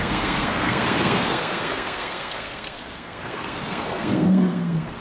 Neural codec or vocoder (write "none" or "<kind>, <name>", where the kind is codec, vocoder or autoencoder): codec, SNAC